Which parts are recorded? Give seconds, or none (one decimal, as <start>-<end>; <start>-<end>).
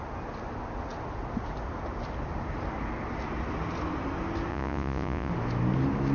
0.0-4.5; 5.3-6.1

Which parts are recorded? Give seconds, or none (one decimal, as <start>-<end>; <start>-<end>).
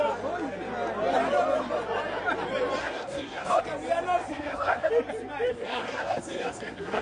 0.0-2.8; 3.6-4.3; 4.9-5.5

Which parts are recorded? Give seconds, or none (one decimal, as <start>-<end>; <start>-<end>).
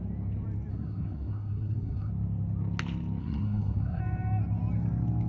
0.0-0.7; 2.1-3.2; 4.0-5.3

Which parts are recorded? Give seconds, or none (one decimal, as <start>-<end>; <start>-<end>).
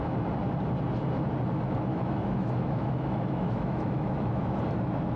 0.0-1.9; 4.6-5.2